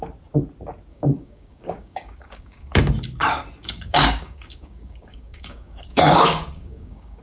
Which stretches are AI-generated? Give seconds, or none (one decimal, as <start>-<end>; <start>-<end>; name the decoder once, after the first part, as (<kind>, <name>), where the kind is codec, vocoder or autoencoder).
0.9-2.8 (codec, DAC); 3.6-7.2